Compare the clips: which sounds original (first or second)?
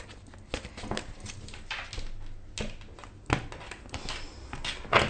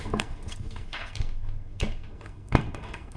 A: first